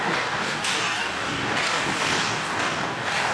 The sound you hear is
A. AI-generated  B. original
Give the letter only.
A